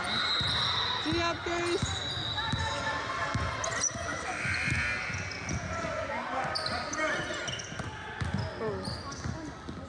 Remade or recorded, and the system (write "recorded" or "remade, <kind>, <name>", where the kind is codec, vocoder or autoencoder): recorded